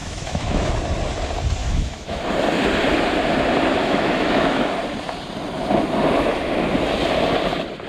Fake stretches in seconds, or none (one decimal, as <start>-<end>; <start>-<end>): 0.0-0.7; 1.6-2.2; 3.8-4.7